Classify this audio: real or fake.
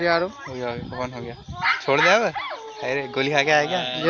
real